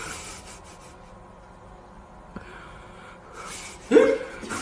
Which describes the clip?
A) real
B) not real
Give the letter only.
A